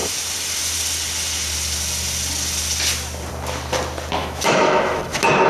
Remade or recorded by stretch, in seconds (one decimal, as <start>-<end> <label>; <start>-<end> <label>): 0.0-4.2 recorded; 4.2-5.0 remade; 5.0-5.5 recorded